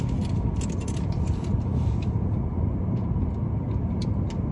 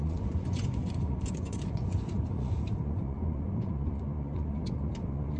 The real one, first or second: first